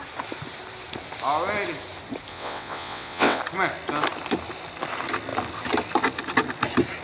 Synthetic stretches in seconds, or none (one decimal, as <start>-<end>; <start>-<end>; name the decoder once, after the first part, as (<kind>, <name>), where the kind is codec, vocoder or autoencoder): 2.3-3.4 (vocoder, WaveNeXt)